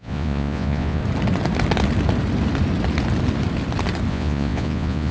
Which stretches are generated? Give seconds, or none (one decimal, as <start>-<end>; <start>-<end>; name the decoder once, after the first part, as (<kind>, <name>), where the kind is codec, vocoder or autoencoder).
0.0-1.0 (vocoder, Vocos); 4.1-5.1